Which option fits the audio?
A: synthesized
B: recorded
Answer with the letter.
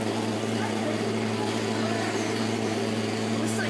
B